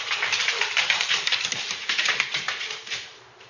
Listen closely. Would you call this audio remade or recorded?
remade